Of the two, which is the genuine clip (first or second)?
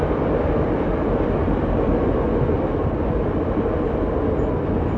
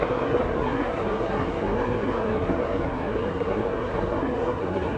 first